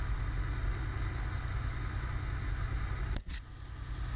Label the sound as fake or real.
real